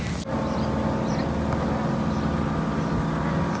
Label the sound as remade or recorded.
recorded